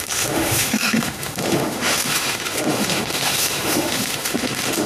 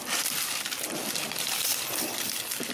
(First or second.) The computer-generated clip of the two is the first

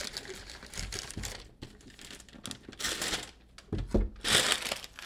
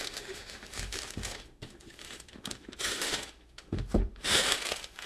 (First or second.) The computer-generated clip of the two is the second